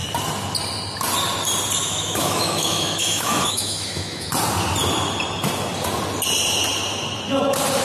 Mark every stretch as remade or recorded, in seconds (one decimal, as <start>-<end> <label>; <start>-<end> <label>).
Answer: 0.0-1.8 recorded; 1.8-4.3 remade; 4.3-7.8 recorded